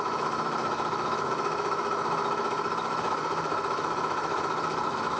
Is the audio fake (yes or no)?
yes